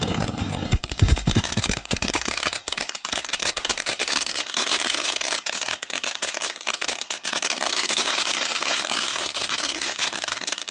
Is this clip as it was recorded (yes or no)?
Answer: no